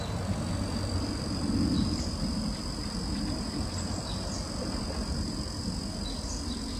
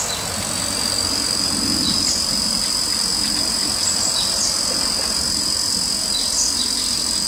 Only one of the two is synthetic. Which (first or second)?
first